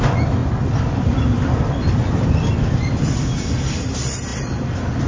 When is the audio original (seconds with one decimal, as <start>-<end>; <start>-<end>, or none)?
0.0-5.1